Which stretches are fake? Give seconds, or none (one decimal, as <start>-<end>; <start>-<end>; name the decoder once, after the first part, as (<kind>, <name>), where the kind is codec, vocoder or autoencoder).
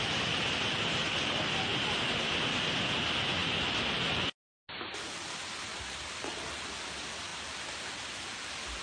none